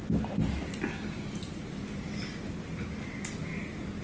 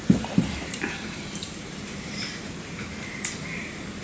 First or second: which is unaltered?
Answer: first